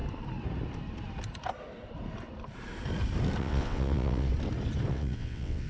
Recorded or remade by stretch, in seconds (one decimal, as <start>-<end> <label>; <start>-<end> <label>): 0.0-3.4 recorded; 3.4-4.3 remade; 4.3-4.9 recorded; 4.9-5.7 remade